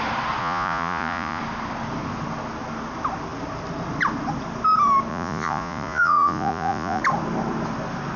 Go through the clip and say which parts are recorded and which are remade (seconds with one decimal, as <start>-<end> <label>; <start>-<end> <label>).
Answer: 0.0-0.4 recorded; 0.4-1.4 remade; 1.4-5.1 recorded; 5.1-7.0 remade; 7.0-8.2 recorded